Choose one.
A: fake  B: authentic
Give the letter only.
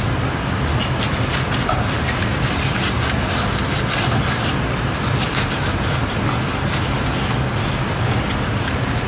B